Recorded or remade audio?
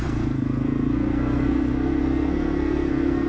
remade